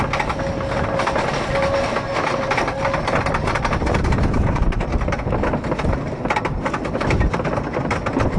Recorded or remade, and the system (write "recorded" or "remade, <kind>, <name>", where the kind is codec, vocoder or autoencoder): recorded